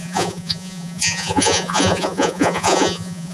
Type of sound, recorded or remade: remade